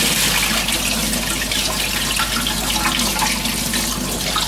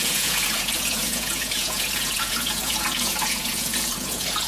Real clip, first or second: first